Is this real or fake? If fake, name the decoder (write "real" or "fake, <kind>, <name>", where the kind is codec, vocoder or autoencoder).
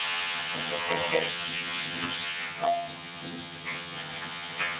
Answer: fake, vocoder, HiFi-GAN